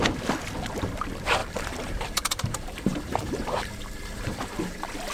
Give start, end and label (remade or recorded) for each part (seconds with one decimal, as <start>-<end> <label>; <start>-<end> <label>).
0.0-1.4 recorded; 1.4-4.5 remade; 4.5-5.1 recorded